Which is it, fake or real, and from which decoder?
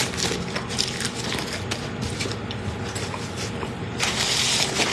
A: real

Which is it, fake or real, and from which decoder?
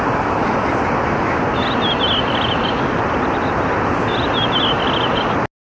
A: real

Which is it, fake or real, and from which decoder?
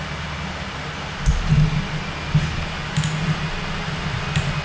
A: real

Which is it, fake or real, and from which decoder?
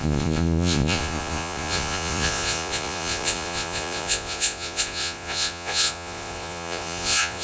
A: fake, vocoder, Vocos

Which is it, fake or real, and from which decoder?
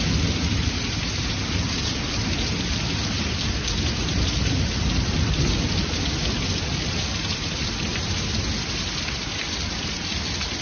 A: real